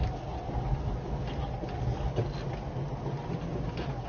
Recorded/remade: recorded